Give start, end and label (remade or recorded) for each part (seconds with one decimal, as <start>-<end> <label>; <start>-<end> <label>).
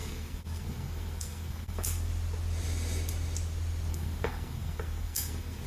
0.0-2.1 remade; 2.1-3.9 recorded; 3.9-5.7 remade